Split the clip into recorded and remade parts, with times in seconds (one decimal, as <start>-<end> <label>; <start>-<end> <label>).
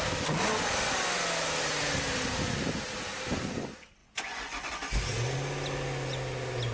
0.0-4.0 recorded; 4.0-4.7 remade; 4.7-6.7 recorded